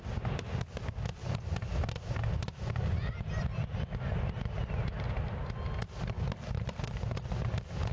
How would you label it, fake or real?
real